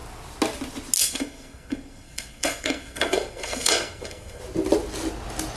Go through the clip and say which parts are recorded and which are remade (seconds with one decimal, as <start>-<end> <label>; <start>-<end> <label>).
0.0-1.0 recorded; 1.0-4.4 remade; 4.4-5.6 recorded